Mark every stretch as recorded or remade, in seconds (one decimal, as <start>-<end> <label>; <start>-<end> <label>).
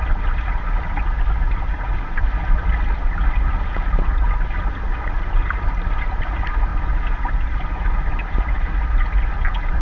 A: 0.0-9.8 recorded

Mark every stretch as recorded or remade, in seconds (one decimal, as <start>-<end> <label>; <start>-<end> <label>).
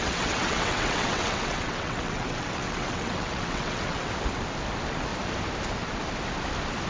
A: 0.0-4.1 remade; 4.1-6.9 recorded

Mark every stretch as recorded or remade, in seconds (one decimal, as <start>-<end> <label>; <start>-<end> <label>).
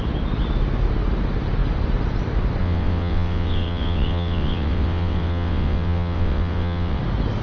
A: 0.0-2.6 recorded; 2.6-7.0 remade; 7.0-7.4 recorded